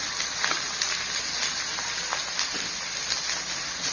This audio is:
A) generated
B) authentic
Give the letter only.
B